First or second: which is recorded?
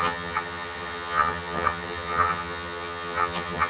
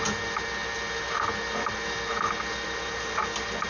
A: second